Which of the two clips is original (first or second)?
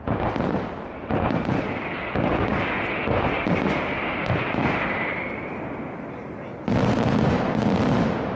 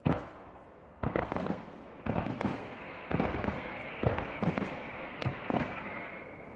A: first